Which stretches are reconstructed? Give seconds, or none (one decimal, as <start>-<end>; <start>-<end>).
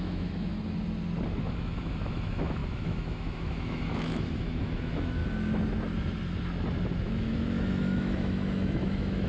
0.0-0.5; 1.4-5.2; 7.0-9.3